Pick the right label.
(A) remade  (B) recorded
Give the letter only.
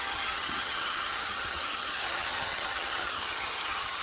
A